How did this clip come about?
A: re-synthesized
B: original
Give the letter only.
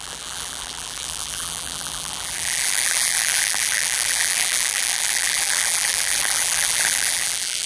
A